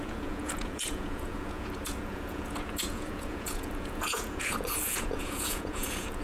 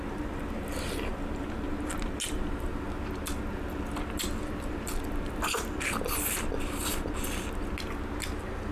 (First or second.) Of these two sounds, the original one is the second